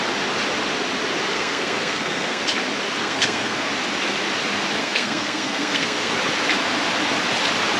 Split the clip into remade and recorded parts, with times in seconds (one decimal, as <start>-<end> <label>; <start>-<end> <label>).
0.0-1.3 recorded; 1.3-2.4 remade; 2.4-3.0 recorded; 3.0-3.7 remade; 3.7-4.8 recorded; 4.8-6.1 remade; 6.1-7.8 recorded